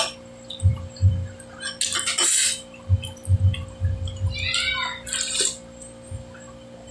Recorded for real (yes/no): yes